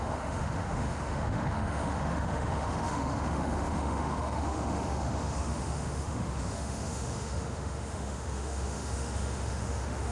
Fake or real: fake